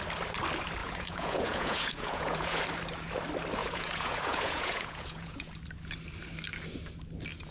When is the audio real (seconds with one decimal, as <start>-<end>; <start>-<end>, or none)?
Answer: 0.0-0.8; 2.6-3.6; 5.5-7.5